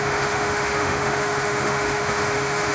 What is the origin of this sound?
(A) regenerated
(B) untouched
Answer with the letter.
A